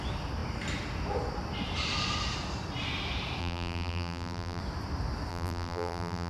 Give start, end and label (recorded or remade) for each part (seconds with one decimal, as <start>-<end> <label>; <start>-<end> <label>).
0.0-3.4 recorded; 3.4-4.6 remade; 4.6-5.3 recorded; 5.3-6.3 remade